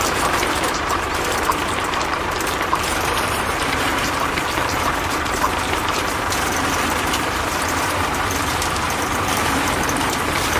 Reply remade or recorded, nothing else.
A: remade